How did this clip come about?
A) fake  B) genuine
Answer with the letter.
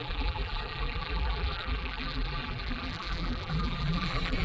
A